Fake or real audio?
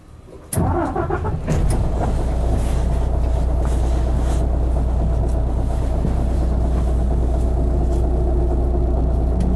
real